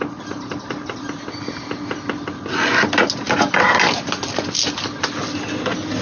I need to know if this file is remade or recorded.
recorded